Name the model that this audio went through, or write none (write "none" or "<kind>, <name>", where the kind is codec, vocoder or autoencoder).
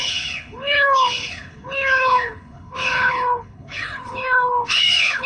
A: codec, HILCodec